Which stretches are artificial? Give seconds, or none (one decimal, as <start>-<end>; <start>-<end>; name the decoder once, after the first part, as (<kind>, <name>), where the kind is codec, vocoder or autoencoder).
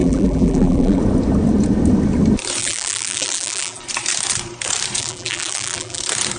0.0-1.0 (vocoder, BigVGAN v2); 2.6-3.8; 5.0-6.0